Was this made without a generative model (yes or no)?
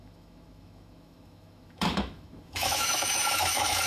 no